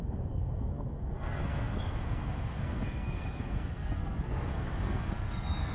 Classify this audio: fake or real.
fake